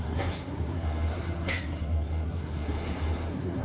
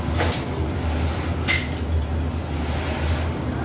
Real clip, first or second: second